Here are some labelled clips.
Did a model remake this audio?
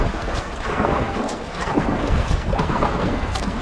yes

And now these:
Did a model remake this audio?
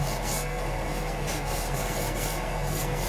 yes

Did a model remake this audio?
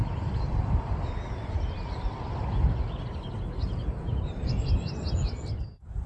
no